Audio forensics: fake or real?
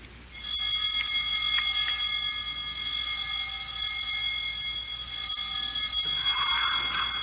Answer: real